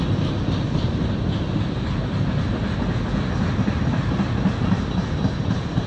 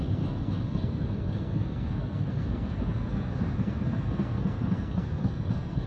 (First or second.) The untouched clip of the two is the first